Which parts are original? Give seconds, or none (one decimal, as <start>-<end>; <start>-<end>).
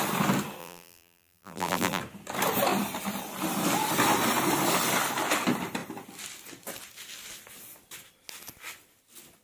0.0-0.6; 2.0-9.4